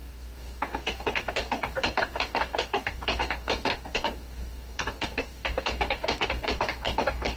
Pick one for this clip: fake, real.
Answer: fake